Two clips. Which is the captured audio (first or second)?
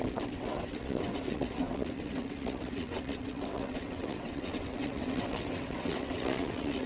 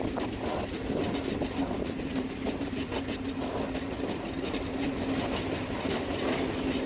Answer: second